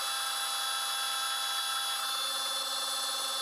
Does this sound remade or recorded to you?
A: recorded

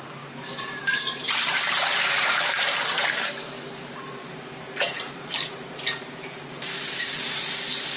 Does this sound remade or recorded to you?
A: remade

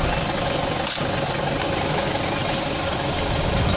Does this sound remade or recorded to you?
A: recorded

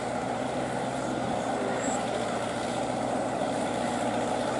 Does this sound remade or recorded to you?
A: remade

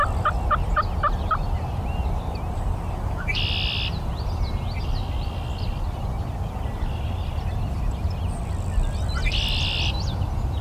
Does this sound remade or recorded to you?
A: recorded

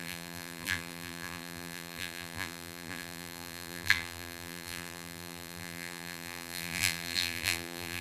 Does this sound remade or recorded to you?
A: remade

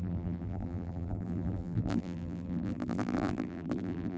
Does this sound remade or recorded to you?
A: remade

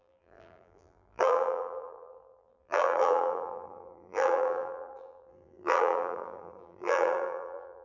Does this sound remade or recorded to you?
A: remade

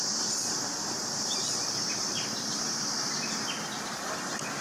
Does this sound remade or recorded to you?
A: remade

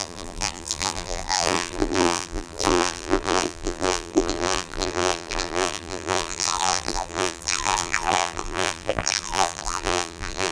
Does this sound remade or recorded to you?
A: remade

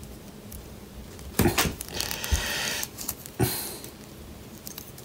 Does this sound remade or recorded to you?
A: remade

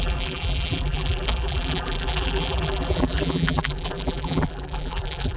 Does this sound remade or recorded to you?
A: remade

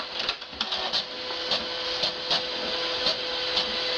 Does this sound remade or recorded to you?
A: remade